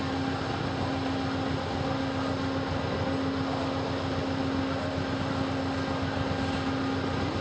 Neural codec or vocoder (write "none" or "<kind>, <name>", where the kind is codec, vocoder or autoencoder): none